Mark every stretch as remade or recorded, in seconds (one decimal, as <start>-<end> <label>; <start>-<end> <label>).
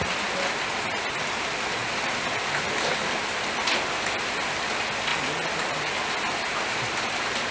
0.0-7.5 recorded